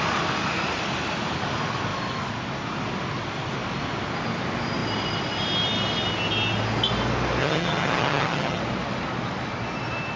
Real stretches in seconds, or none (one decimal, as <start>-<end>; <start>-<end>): 0.0-7.4; 8.6-10.2